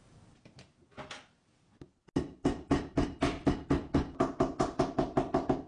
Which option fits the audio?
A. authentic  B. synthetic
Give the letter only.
A